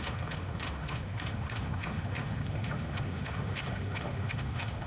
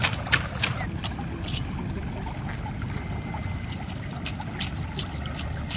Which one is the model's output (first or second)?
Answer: first